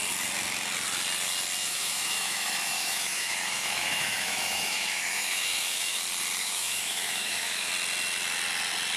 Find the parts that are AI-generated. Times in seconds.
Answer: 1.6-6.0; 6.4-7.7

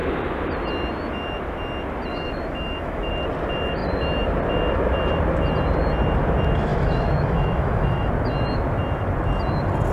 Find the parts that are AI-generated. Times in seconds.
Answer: 2.1-3.1; 6.7-8.1